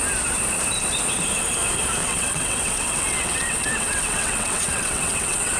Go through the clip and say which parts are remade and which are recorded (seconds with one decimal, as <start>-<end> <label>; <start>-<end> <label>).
0.0-2.0 recorded; 2.0-5.6 remade